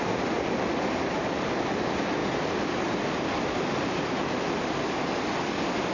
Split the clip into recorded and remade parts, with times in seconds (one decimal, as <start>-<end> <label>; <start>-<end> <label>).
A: 0.0-5.9 recorded